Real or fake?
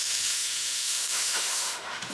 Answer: fake